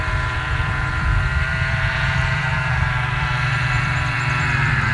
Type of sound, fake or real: fake